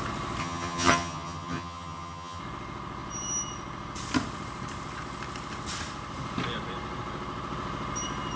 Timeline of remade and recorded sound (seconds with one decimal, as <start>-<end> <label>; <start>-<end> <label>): 0.0-0.4 recorded; 0.4-2.4 remade; 2.4-8.4 recorded